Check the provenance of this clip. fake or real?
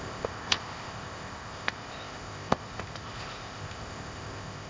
fake